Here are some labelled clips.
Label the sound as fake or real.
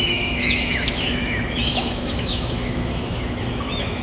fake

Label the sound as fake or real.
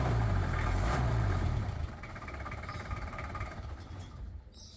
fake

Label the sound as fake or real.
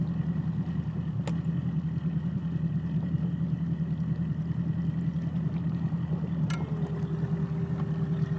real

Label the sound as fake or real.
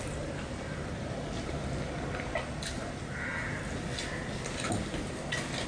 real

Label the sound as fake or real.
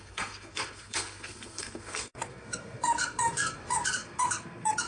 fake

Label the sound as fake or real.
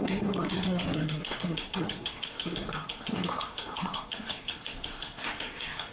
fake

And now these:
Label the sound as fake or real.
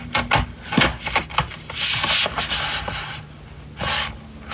real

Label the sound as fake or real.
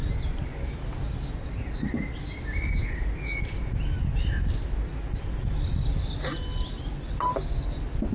real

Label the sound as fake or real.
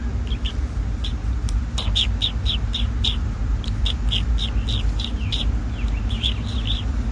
real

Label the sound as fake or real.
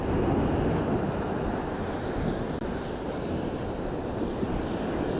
real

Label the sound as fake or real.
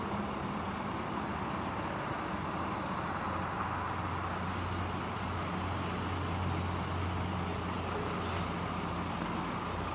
real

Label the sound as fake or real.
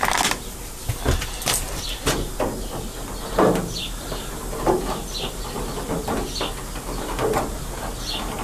real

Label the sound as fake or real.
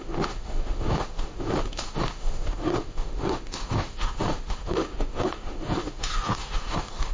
fake